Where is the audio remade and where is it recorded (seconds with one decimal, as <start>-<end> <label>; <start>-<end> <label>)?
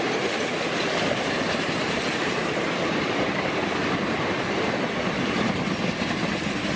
0.0-0.5 recorded; 0.5-4.6 remade; 4.6-6.8 recorded